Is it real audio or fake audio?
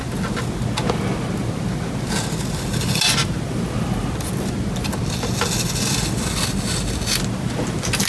real